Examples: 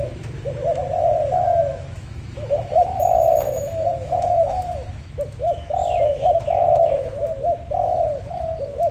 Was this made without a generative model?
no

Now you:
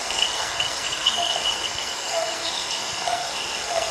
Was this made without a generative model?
no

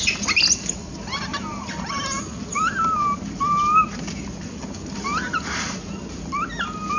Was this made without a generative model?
yes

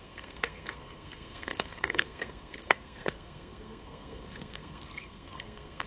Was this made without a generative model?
no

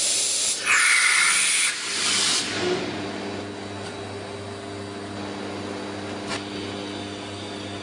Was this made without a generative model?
yes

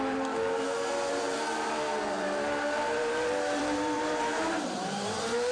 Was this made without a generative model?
no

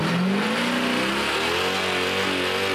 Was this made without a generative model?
yes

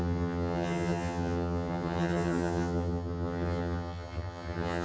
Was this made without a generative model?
no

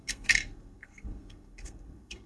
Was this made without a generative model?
no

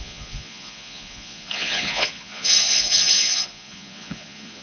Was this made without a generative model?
no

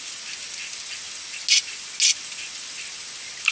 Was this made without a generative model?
yes